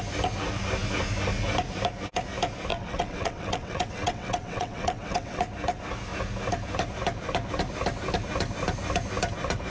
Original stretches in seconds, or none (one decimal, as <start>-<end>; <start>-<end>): 0.0-2.7; 5.4-9.7